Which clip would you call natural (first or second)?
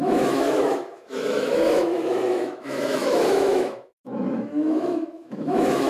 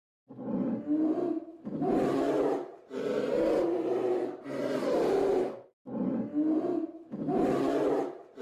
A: second